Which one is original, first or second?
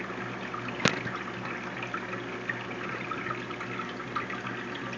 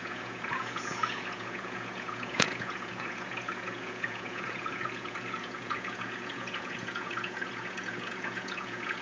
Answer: first